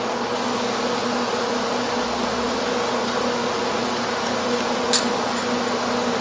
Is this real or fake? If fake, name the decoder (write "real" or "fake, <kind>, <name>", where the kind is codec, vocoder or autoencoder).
real